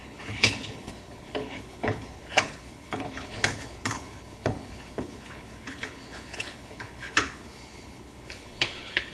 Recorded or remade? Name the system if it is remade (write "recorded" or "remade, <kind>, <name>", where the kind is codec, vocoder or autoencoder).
remade, codec, HILCodec